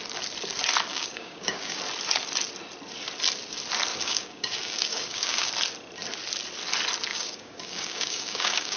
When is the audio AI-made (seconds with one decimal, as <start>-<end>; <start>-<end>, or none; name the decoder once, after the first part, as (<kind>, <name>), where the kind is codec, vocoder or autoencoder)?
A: 0.9-1.8 (codec, DAC); 3.9-5.5; 7.1-8.8